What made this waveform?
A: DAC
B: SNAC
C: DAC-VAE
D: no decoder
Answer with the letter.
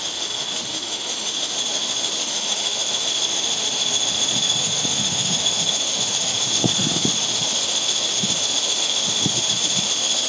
C